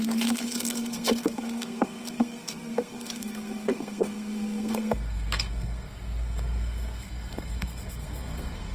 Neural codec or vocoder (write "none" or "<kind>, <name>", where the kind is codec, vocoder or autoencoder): codec, SNAC